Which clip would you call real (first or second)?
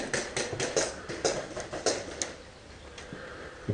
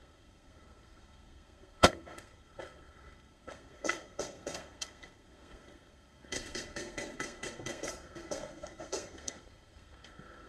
first